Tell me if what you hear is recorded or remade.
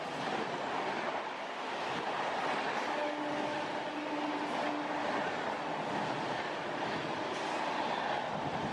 recorded